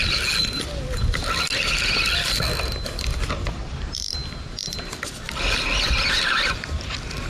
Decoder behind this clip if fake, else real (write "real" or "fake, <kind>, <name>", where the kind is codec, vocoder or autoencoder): real